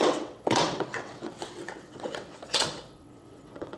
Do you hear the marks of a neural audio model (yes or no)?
yes